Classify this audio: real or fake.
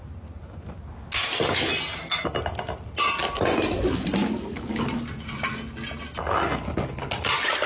real